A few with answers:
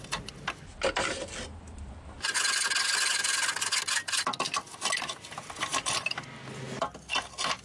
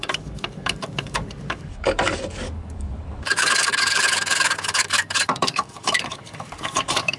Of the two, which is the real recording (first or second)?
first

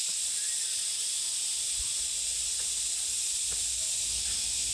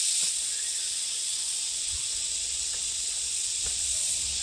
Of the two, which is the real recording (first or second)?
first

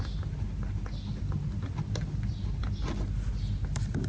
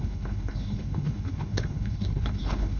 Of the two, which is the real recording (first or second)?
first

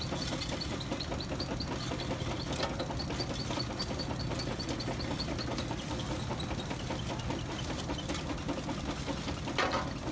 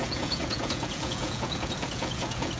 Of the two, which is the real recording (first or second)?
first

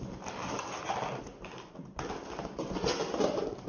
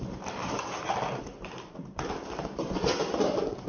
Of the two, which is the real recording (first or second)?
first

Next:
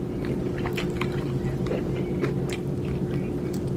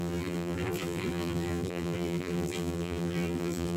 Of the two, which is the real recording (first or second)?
first